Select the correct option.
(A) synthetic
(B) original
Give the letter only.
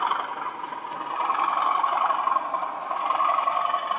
B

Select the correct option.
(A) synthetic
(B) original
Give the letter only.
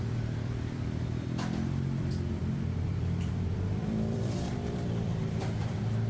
A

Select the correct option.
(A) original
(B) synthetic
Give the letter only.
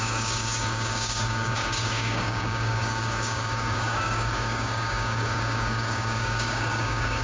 B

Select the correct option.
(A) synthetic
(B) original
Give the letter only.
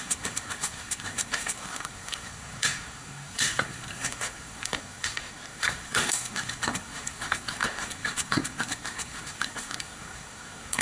A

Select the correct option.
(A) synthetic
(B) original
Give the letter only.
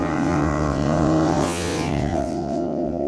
A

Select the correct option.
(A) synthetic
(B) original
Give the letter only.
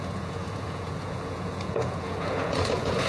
A